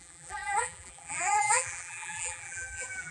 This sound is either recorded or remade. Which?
remade